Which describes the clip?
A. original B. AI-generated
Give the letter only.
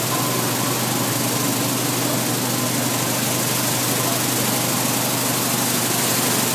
A